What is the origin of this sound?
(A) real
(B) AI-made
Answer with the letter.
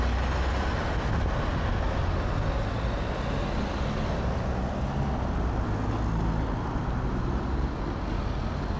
A